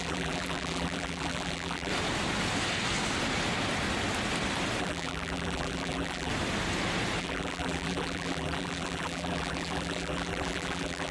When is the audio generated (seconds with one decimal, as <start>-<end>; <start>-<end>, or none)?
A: 0.0-1.9; 4.8-6.3; 7.2-11.1